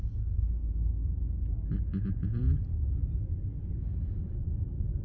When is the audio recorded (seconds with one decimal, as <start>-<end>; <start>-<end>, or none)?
0.0-5.0